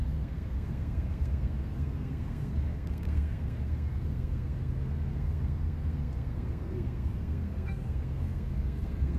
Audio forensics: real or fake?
fake